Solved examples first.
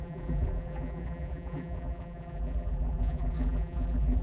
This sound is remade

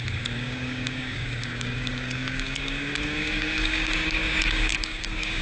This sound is remade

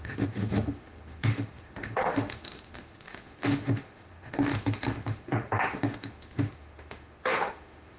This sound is remade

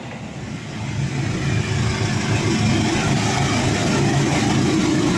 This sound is recorded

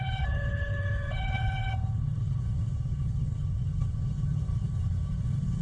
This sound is remade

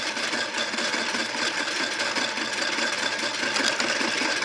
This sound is recorded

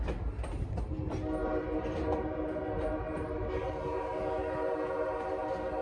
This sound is recorded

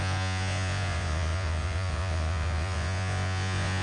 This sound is remade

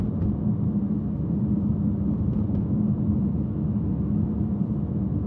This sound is recorded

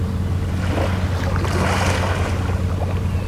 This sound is recorded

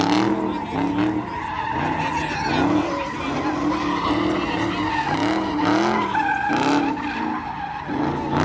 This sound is recorded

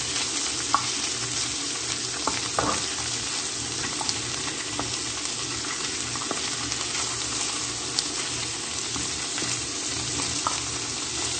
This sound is recorded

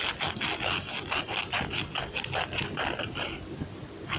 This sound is recorded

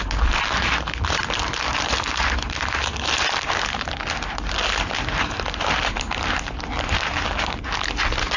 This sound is recorded